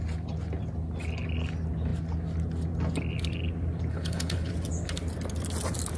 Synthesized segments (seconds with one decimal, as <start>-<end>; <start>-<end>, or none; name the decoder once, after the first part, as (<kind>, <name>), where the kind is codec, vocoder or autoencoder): 3.9-4.5 (codec, HILCodec)